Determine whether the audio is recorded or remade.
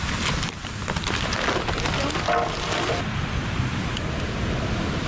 recorded